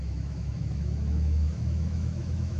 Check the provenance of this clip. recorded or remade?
remade